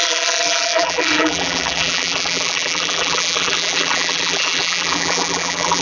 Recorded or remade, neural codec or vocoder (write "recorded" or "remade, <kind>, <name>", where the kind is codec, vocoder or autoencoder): remade, vocoder, BigVGAN v2